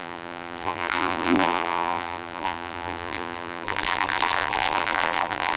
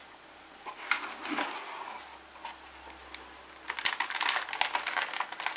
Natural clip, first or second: second